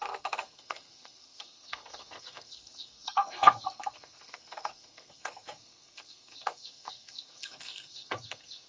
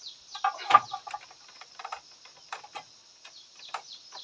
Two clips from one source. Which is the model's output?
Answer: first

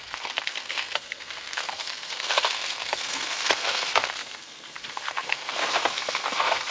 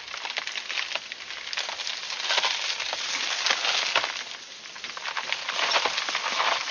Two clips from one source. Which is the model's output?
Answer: first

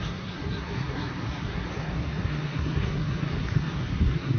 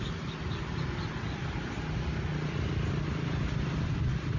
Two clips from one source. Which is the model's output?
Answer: first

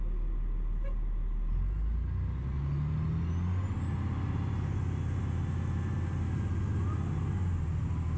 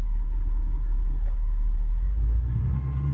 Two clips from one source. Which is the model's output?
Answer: second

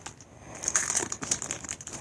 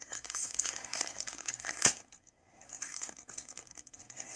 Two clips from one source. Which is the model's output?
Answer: second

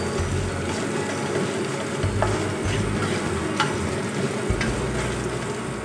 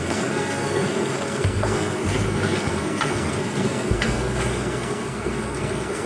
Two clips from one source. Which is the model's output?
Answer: second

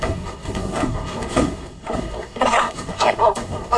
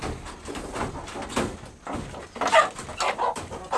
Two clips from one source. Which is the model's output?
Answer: first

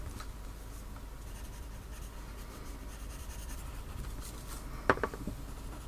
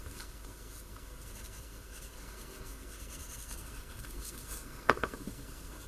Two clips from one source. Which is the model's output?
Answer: second